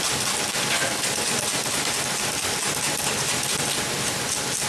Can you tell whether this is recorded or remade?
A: recorded